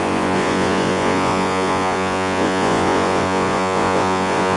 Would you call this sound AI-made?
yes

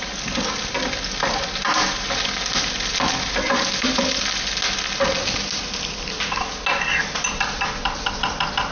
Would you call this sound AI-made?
no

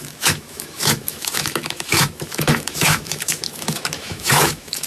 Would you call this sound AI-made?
yes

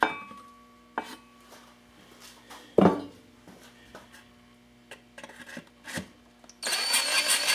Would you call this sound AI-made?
no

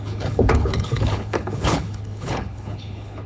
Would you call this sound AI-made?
yes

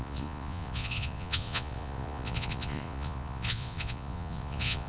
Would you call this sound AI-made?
yes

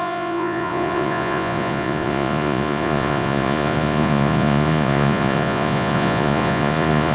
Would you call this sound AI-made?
yes